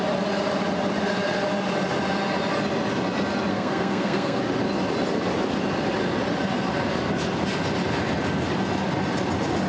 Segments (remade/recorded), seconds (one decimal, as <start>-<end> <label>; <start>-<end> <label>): 0.0-3.5 recorded; 3.5-4.4 remade; 4.4-9.7 recorded